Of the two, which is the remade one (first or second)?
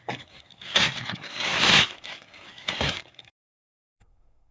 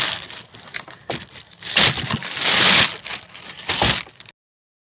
first